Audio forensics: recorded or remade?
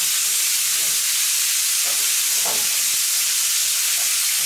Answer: recorded